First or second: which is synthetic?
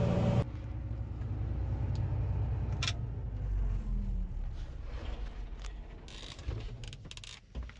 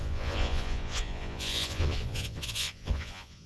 second